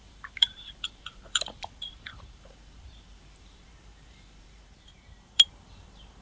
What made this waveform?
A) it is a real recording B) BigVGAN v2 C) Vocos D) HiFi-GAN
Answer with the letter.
B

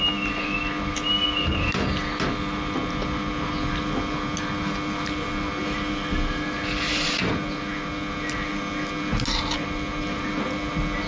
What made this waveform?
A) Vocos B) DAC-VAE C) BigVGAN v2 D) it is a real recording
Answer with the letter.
D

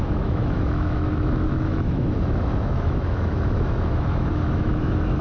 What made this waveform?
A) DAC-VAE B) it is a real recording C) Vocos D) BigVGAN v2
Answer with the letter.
A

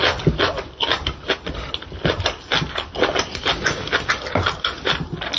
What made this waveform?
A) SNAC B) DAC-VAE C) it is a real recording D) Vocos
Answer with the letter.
C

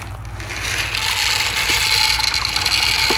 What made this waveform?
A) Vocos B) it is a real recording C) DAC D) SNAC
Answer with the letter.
B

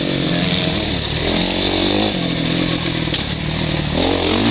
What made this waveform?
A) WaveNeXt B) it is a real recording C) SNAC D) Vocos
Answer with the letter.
B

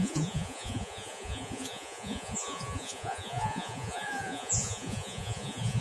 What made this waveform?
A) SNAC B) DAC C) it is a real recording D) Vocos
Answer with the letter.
D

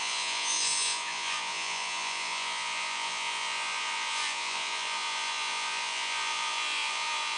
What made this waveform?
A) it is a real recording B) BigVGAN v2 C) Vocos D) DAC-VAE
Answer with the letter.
C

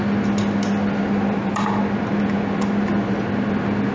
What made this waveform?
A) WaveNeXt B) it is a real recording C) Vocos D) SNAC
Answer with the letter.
B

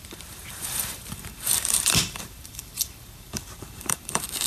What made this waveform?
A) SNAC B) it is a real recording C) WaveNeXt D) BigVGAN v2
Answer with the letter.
D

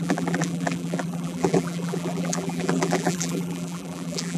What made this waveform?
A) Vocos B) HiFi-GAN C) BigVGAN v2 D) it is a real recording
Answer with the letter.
C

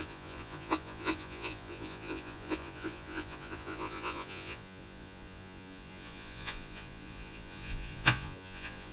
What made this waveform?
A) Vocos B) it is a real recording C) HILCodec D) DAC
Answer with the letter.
A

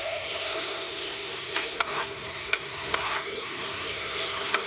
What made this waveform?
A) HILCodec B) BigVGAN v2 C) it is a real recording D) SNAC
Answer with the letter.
D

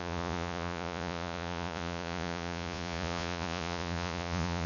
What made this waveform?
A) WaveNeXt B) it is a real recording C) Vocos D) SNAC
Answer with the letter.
C